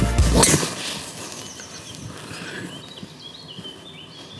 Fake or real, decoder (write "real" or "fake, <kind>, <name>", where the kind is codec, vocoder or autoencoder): real